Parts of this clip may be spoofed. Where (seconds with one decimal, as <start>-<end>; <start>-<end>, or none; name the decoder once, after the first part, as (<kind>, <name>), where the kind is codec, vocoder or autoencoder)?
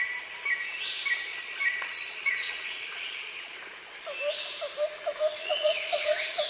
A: 1.3-3.5 (vocoder, Vocos); 5.4-6.5